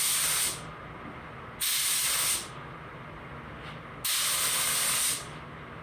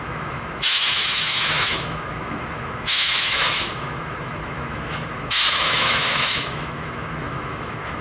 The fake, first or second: second